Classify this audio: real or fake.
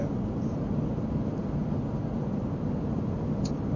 real